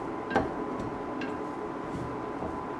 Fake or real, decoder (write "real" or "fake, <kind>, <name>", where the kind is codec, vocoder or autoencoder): real